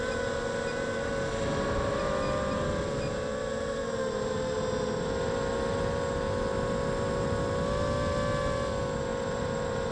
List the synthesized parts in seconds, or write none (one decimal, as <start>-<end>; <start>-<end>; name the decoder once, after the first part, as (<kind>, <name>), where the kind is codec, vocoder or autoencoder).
9.1-9.9 (vocoder, BigVGAN v2)